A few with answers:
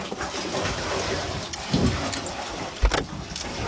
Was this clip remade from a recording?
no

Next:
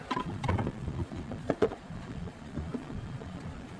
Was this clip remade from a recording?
yes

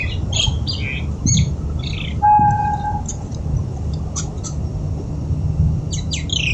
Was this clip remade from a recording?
no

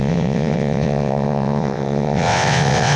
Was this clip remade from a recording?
yes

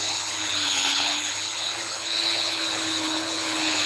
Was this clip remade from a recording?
yes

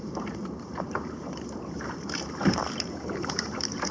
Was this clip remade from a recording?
yes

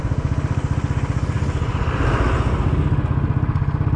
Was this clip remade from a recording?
no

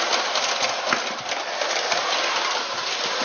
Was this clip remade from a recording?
no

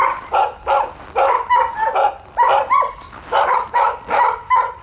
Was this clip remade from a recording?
no